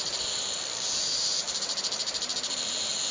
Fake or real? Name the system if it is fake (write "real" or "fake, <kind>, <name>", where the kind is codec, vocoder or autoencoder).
fake, vocoder, BigVGAN v2